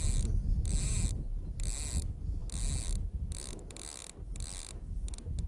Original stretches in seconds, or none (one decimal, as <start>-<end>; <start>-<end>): 0.0-5.5